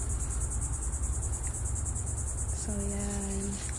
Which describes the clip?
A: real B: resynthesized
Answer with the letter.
A